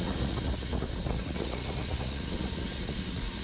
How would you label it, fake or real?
fake